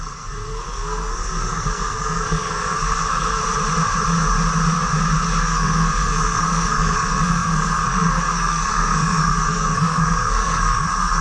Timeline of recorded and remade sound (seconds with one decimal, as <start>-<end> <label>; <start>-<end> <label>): 0.0-3.4 remade; 3.4-5.4 recorded; 5.4-11.2 remade